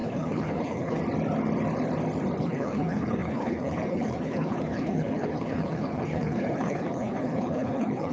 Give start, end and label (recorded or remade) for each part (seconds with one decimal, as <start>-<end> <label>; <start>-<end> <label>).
0.0-1.0 remade; 1.0-2.4 recorded; 2.4-8.1 remade